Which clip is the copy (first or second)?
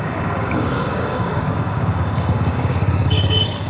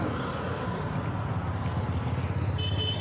first